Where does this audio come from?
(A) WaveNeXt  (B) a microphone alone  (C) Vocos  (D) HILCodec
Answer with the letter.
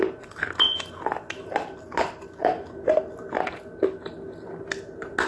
B